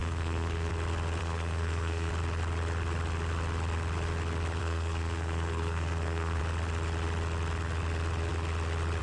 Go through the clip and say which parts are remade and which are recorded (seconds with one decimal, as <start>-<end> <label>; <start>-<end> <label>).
0.0-0.7 remade; 0.7-1.2 recorded; 1.2-2.1 remade; 2.1-4.6 recorded; 4.6-6.4 remade; 6.4-9.0 recorded